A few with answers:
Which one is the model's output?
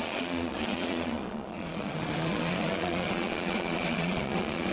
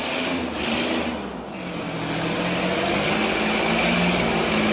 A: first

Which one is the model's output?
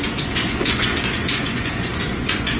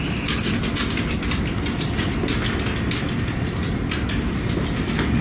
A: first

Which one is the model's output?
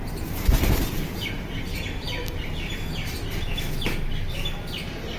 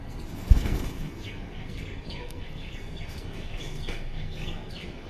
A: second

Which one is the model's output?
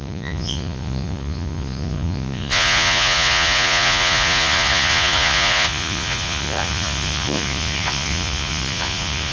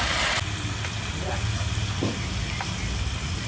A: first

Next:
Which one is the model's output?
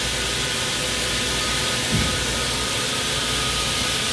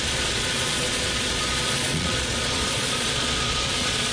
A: second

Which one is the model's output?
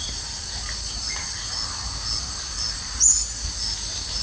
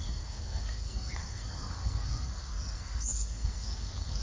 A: second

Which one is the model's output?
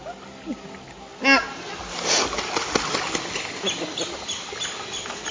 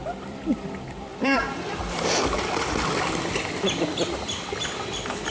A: second